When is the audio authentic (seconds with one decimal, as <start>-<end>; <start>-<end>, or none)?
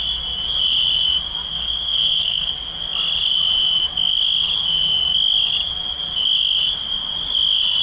0.0-1.5; 2.5-7.8